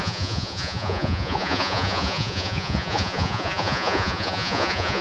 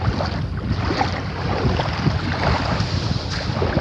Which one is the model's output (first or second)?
first